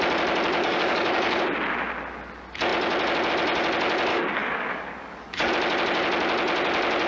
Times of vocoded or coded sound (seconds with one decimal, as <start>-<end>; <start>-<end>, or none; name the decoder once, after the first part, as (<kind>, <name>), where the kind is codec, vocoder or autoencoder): 0.6-1.4 (codec, DAC); 4.1-5.5

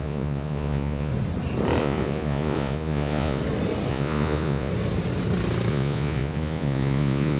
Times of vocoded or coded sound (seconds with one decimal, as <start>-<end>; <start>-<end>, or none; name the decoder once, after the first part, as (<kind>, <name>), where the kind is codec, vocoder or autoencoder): 0.0-1.1 (vocoder, Vocos); 1.8-3.4; 3.9-4.7; 5.7-7.4

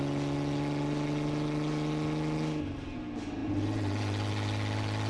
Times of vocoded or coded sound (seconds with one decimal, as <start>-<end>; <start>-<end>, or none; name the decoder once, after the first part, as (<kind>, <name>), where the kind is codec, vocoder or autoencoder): none

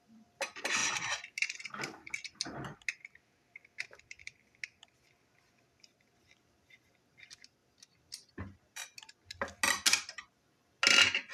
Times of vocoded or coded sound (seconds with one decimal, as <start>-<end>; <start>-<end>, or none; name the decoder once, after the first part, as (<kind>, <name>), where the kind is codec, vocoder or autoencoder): none